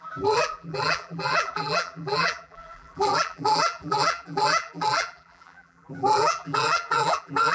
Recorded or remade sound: remade